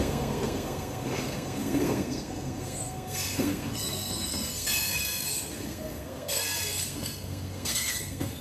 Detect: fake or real fake